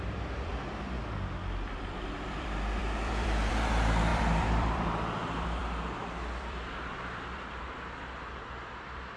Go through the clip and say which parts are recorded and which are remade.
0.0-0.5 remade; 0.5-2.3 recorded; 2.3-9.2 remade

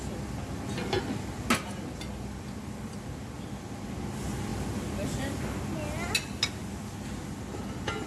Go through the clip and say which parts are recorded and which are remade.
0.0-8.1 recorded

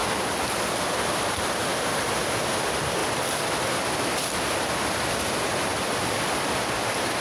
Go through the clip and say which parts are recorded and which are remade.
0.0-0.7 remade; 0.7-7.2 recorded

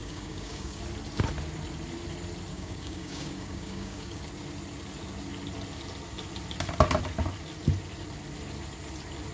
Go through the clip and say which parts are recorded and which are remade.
0.0-0.8 remade; 0.8-2.5 recorded; 2.5-4.2 remade; 4.2-9.3 recorded

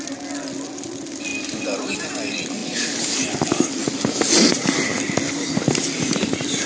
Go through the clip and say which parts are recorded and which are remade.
0.0-6.7 recorded